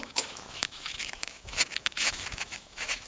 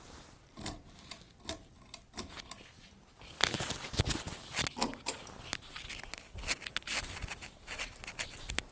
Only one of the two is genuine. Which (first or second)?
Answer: second